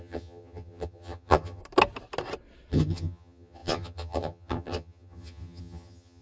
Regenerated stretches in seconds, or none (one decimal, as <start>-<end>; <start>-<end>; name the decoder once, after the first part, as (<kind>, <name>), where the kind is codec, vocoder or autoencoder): 0.0-1.6 (vocoder, HiFi-GAN); 2.7-6.2